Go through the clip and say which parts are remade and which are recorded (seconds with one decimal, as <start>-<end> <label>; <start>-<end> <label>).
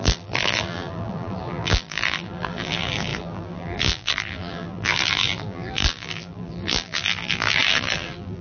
0.0-8.4 remade